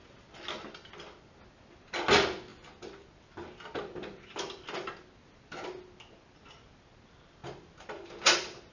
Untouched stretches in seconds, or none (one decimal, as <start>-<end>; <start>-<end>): 0.0-8.7